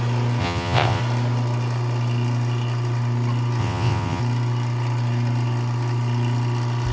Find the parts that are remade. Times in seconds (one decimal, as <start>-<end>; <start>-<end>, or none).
0.4-1.0; 3.6-4.2